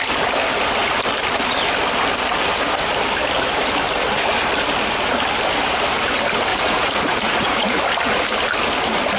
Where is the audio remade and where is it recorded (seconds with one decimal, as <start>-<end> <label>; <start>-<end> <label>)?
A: 0.0-6.5 recorded; 6.5-7.8 remade; 7.8-9.2 recorded

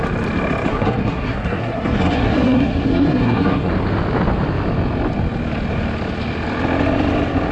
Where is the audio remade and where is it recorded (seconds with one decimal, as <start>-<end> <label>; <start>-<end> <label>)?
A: 0.0-0.7 recorded; 0.7-3.7 remade; 3.7-7.5 recorded

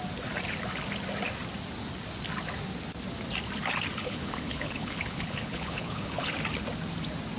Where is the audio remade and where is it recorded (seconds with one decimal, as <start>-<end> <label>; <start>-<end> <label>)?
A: 0.0-4.0 recorded; 4.0-6.3 remade; 6.3-7.4 recorded

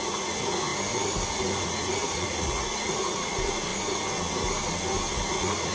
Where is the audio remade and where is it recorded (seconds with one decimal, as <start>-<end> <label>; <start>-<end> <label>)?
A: 0.0-0.7 remade; 0.7-1.3 recorded; 1.3-3.7 remade; 3.7-5.3 recorded; 5.3-5.7 remade

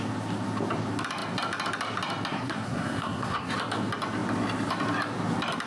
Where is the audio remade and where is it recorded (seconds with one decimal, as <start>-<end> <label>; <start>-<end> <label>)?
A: 0.0-2.3 recorded; 2.3-3.5 remade; 3.5-5.7 recorded

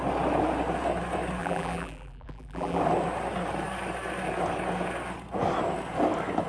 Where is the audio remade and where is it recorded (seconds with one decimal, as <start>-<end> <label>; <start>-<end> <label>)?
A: 0.0-1.4 recorded; 1.4-2.8 remade; 2.8-6.5 recorded

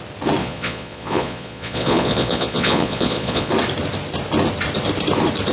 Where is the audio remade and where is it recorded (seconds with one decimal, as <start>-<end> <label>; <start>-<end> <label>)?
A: 0.0-0.4 recorded; 0.4-3.5 remade; 3.5-5.5 recorded

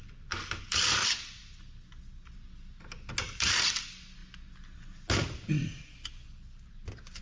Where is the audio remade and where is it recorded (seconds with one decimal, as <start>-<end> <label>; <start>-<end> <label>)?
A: 0.0-7.2 recorded